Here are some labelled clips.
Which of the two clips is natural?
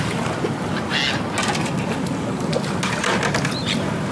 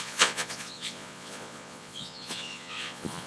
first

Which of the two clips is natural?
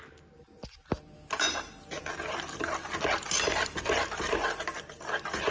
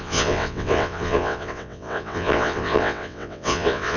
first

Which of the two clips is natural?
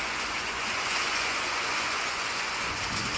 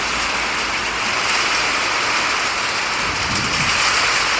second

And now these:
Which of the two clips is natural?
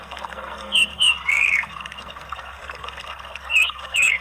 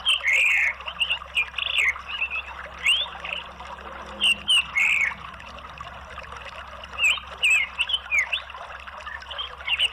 second